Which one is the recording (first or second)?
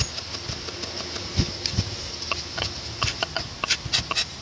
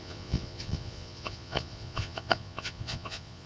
first